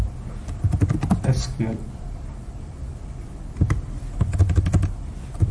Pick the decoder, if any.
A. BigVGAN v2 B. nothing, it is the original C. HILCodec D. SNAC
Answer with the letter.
A